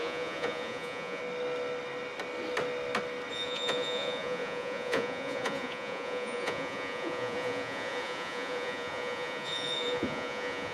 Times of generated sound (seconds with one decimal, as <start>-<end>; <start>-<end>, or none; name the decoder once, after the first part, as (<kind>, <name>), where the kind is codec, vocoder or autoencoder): 0.0-1.2 (vocoder, Vocos); 3.3-10.7